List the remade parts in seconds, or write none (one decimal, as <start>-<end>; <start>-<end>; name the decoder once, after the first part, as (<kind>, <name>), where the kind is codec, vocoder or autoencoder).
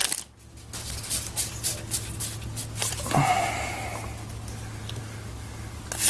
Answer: none